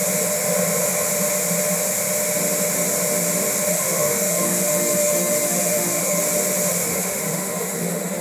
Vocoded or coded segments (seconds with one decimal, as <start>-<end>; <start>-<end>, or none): 3.7-6.2; 6.9-8.2